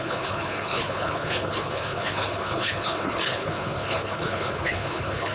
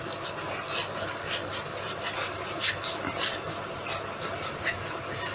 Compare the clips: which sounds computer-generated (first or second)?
first